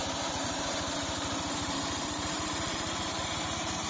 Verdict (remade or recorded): remade